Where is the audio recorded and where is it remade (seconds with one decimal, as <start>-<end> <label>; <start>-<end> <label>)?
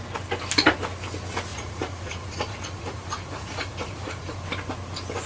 0.0-1.5 recorded; 1.5-4.4 remade; 4.4-5.3 recorded